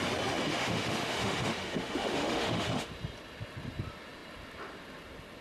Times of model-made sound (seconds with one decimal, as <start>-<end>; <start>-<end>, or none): 0.5-2.9